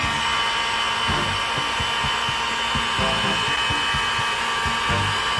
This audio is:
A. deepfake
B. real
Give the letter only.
B